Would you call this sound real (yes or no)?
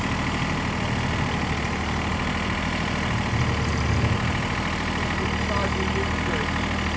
yes